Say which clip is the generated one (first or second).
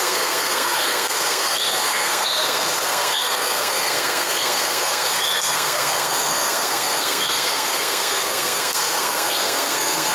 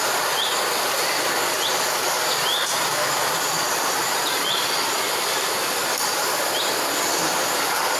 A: first